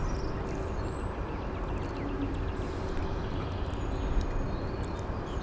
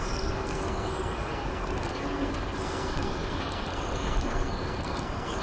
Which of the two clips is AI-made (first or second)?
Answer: second